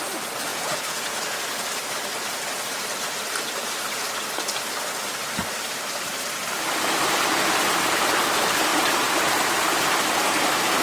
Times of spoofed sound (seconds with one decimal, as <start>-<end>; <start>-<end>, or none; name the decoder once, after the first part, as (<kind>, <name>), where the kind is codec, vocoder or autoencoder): 0.5-1.2 (vocoder, Vocos)